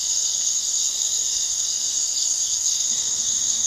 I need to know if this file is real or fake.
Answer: fake